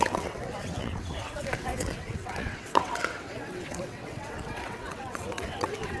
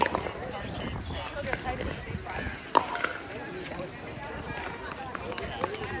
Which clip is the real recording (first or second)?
second